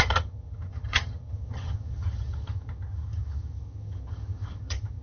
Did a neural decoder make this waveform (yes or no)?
yes